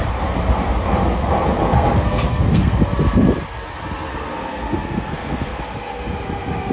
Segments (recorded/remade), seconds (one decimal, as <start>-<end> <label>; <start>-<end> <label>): 0.0-1.6 recorded; 1.6-2.7 remade; 2.7-4.1 recorded; 4.1-5.6 remade; 5.6-6.7 recorded